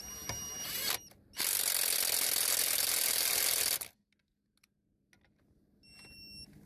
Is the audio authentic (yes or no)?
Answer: yes